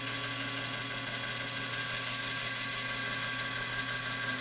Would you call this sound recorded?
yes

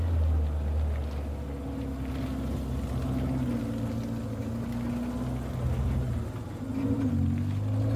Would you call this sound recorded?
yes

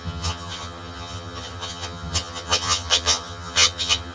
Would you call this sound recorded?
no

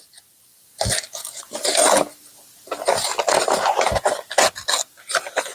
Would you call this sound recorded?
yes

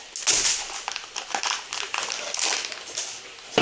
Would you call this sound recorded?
yes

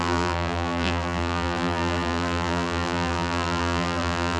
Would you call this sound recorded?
no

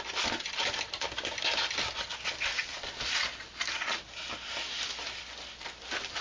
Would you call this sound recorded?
yes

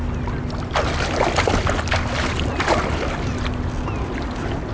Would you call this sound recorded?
yes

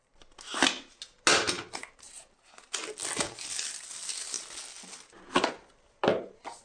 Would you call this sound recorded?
yes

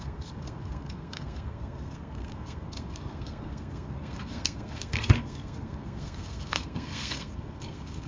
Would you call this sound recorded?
no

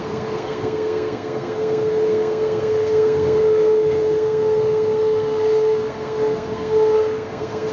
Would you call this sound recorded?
no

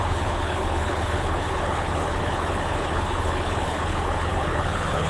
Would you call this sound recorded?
no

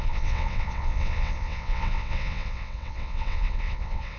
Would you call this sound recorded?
no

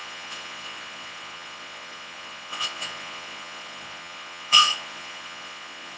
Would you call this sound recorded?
no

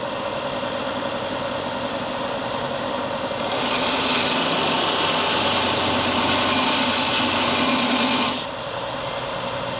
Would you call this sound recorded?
yes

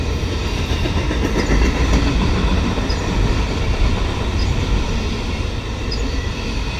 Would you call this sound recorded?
no